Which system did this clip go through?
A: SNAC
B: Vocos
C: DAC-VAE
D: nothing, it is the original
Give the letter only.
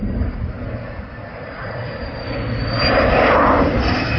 D